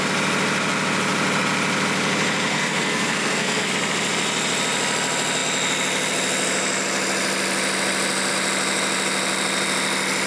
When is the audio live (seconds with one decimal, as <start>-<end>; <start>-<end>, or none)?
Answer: 0.0-2.5; 3.7-10.3